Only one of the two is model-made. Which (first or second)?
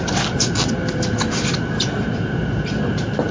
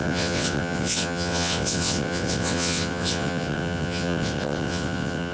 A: second